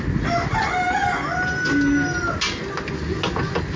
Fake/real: real